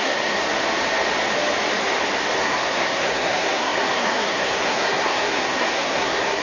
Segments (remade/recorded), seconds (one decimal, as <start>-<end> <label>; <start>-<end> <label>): 0.0-0.4 remade; 0.4-2.4 recorded; 2.4-6.4 remade